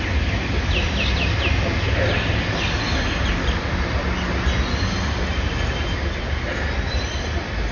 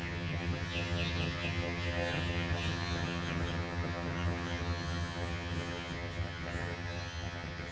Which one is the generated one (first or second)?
second